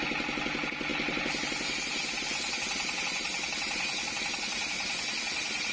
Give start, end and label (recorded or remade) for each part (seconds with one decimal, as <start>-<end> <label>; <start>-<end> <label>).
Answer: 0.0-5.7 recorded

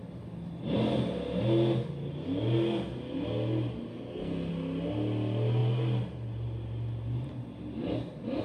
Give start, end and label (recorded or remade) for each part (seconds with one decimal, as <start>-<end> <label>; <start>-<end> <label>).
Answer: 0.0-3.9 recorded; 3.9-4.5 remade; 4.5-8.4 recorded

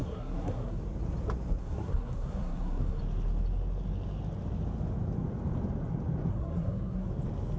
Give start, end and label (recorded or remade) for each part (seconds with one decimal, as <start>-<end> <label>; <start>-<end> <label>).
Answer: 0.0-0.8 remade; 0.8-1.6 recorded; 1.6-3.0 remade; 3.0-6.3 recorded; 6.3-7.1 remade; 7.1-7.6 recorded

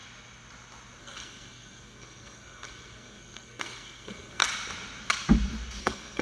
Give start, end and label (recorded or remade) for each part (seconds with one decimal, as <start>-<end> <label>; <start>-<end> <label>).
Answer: 0.0-1.0 recorded; 1.0-4.4 remade; 4.4-5.8 recorded; 5.8-6.2 remade